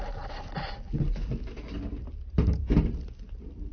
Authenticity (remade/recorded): recorded